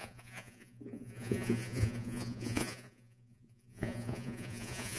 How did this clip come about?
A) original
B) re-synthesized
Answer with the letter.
B